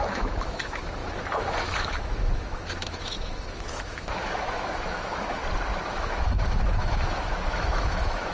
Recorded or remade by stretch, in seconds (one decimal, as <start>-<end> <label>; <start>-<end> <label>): 0.0-5.4 remade; 5.4-5.9 recorded; 5.9-8.3 remade